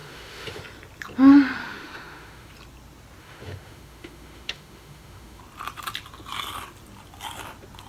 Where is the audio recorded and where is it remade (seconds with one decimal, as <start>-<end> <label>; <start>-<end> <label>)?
0.0-0.6 remade; 0.6-1.6 recorded; 1.6-2.5 remade; 2.5-3.2 recorded; 3.2-5.4 remade; 5.4-7.9 recorded